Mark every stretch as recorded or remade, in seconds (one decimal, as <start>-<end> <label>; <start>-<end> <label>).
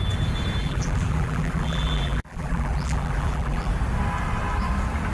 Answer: 0.0-0.6 recorded; 0.6-3.7 remade; 3.7-5.1 recorded